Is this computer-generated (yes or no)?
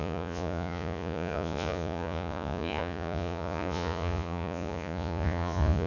yes